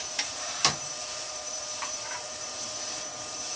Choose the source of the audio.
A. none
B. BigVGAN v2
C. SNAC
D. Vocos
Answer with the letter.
B